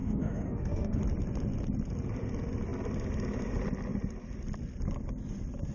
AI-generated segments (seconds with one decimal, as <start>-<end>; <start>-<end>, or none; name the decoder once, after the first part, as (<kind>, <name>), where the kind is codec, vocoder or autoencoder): 0.0-1.0 (autoencoder, DAC-VAE)